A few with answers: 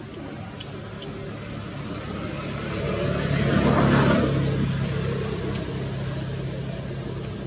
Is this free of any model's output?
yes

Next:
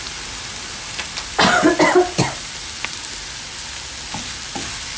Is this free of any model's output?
yes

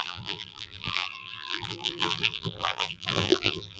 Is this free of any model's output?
no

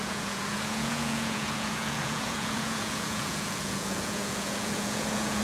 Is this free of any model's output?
no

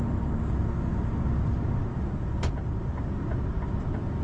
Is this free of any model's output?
yes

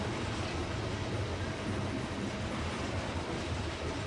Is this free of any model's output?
yes